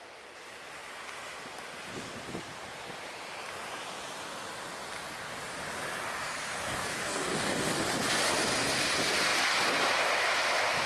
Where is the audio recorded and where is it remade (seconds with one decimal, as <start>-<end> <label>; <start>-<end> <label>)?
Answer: 0.0-6.6 recorded; 6.6-7.8 remade; 7.8-10.9 recorded